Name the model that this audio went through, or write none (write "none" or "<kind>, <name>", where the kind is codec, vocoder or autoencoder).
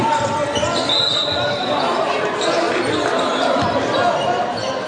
none